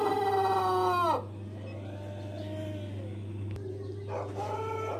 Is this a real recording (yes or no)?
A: yes